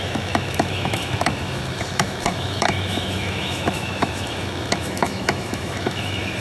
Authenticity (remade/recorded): remade